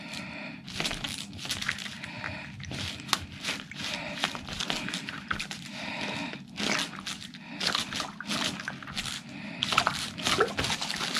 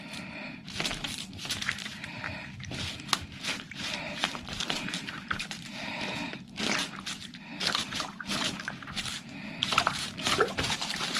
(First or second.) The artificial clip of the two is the second